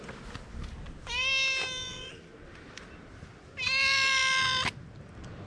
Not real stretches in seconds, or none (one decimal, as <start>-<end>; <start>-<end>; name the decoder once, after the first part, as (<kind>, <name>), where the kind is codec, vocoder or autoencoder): none